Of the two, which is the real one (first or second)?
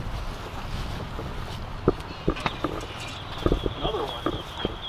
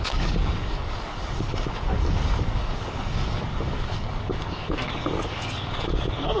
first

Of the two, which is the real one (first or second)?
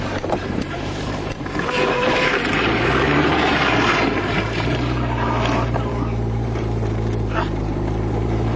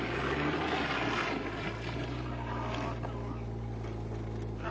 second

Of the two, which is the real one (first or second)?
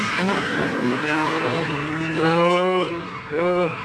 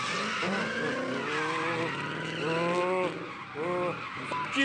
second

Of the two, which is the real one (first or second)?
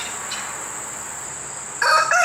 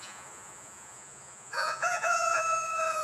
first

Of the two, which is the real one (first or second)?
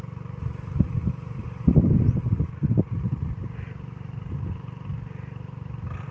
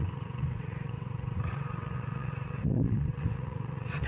first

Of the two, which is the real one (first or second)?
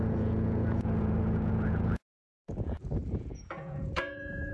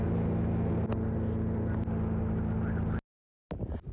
second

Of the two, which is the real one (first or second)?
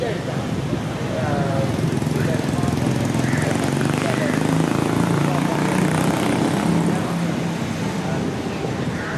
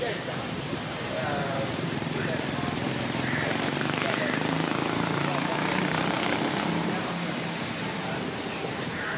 first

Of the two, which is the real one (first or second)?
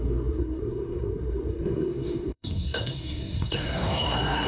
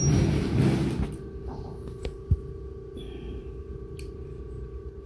second